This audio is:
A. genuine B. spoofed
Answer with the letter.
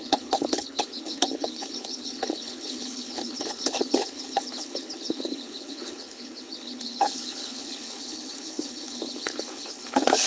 B